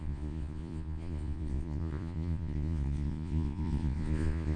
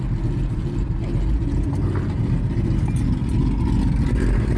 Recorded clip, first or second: second